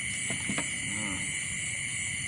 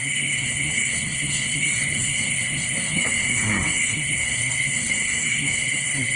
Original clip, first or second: first